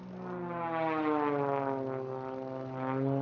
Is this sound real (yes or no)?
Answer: yes